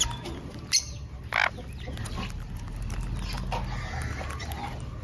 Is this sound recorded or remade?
recorded